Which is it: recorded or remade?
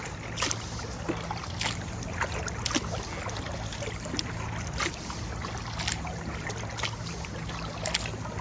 recorded